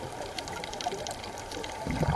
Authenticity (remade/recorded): recorded